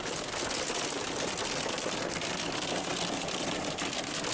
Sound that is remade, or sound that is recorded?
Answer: recorded